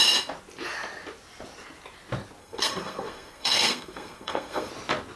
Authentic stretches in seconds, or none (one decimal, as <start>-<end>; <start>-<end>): 0.0-2.4; 4.7-5.2